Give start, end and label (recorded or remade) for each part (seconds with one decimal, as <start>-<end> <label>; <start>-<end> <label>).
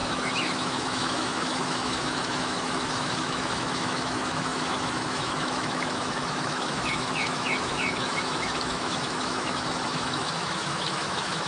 0.0-11.5 remade